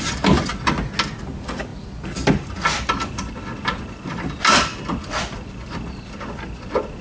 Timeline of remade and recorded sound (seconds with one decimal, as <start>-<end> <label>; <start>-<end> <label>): 0.0-0.5 remade; 0.5-1.1 recorded; 1.1-7.0 remade